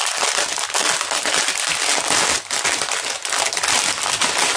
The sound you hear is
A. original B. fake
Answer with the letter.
A